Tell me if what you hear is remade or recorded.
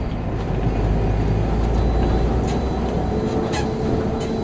recorded